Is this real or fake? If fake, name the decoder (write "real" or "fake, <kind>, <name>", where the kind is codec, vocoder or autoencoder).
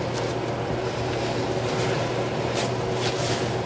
real